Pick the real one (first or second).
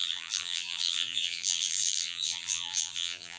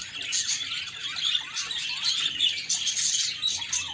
second